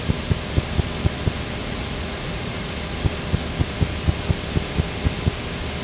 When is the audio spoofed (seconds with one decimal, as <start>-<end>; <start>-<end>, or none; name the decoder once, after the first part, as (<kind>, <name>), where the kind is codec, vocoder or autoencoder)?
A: 1.6-2.7 (vocoder, Vocos)